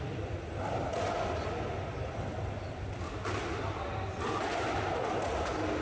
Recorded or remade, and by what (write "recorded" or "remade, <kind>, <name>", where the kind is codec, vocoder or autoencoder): recorded